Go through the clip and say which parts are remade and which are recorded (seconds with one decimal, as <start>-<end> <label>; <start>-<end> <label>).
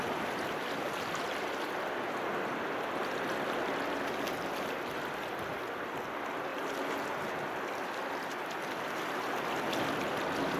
0.0-10.6 recorded